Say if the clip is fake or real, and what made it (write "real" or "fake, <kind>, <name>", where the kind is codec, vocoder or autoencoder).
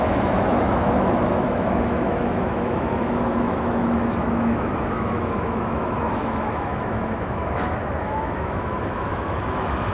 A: fake, autoencoder, DAC-VAE